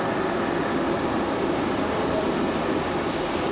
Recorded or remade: recorded